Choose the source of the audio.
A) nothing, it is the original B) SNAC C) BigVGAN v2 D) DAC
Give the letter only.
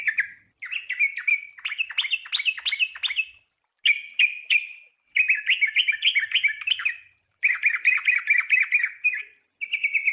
A